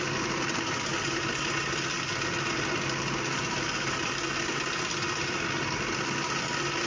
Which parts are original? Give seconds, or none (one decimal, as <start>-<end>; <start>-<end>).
0.0-6.9

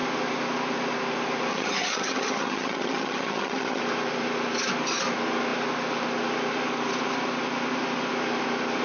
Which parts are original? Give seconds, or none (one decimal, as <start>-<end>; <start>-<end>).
0.0-1.5; 3.8-8.8

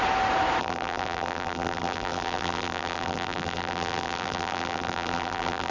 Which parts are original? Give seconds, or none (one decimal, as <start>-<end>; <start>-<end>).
0.0-0.6

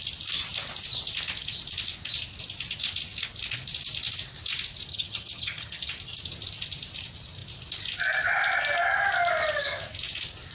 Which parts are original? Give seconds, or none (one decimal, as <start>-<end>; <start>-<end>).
0.0-4.9; 5.9-10.5

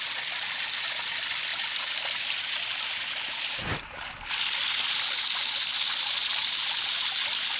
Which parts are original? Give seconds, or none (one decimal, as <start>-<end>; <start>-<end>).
0.0-7.6

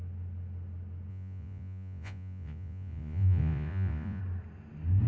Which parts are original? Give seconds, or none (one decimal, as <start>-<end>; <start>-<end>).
0.0-1.1; 4.2-5.1

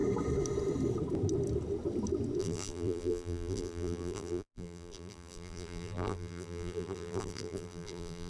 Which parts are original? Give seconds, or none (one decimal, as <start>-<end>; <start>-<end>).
0.0-2.4